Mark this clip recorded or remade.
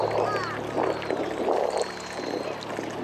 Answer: recorded